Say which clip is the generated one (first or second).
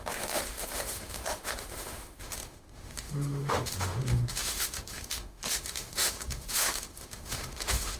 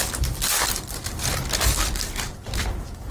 first